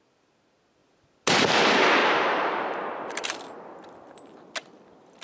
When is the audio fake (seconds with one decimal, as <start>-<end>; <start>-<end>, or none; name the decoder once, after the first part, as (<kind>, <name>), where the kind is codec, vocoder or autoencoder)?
2.0-3.4 (vocoder, BigVGAN v2)